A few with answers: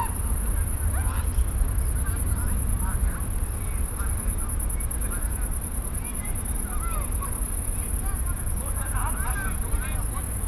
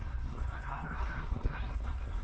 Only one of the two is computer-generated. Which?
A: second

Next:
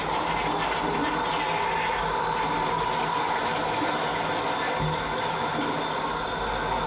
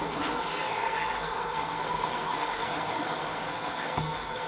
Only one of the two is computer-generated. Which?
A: second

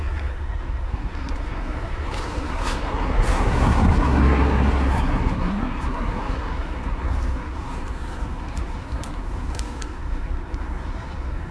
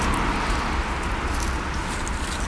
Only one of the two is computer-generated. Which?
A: first